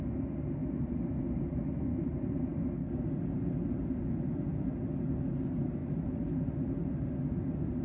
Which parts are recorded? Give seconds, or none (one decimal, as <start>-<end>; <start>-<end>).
0.0-5.8; 6.5-7.8